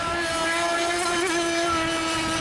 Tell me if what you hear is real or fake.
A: real